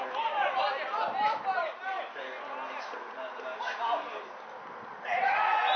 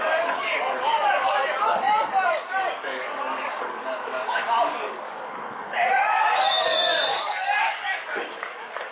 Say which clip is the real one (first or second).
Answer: first